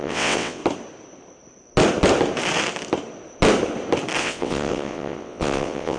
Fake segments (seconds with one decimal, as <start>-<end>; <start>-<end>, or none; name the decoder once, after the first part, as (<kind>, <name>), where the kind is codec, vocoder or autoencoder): 0.0-0.6 (vocoder, WaveNeXt); 4.2-6.0